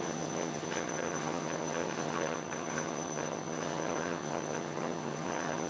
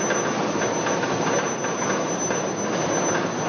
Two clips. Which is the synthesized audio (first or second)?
first